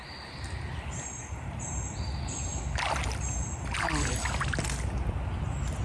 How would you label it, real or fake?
real